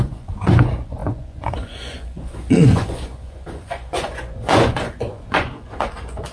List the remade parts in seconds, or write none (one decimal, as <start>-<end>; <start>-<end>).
0.0-6.3